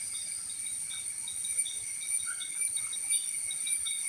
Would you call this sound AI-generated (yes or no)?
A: yes